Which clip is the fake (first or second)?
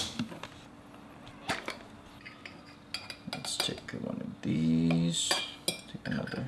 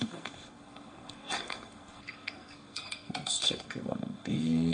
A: second